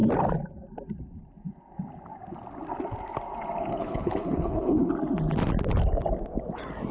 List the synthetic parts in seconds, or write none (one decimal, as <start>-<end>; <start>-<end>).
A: 3.8-4.9